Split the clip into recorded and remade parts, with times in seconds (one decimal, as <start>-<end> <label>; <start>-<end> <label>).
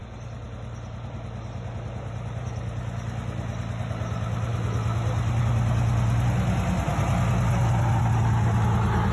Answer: 0.0-2.8 remade; 2.8-9.1 recorded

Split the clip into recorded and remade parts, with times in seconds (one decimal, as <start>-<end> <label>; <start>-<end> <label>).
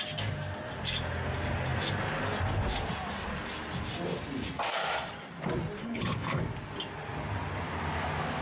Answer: 0.0-5.8 recorded; 5.8-6.4 remade; 6.4-8.4 recorded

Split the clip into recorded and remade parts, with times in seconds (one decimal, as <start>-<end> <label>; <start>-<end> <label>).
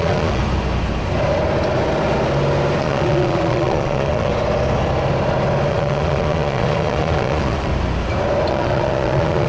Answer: 0.0-0.4 remade; 0.4-2.8 recorded; 2.8-4.3 remade; 4.3-5.7 recorded; 5.7-7.7 remade; 7.7-8.5 recorded; 8.5-9.5 remade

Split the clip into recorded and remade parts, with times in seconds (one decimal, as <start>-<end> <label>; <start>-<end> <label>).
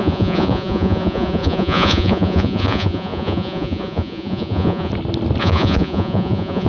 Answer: 0.0-4.9 remade; 4.9-5.4 recorded; 5.4-6.7 remade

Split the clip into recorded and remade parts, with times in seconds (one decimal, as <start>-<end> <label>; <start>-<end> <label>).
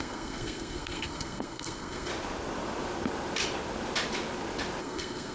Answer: 0.0-2.1 remade; 2.1-4.8 recorded; 4.8-5.3 remade